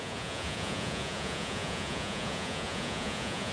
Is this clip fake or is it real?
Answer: fake